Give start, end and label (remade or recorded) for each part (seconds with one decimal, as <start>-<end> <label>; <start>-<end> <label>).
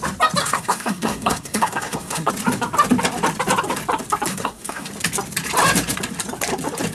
0.0-0.4 recorded; 0.4-2.3 remade; 2.3-4.3 recorded; 4.3-4.9 remade; 4.9-6.9 recorded